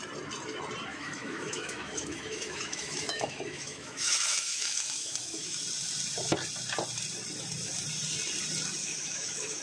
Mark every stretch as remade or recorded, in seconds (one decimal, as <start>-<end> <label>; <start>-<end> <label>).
0.0-0.9 recorded; 0.9-5.6 remade; 5.6-8.8 recorded; 8.8-9.6 remade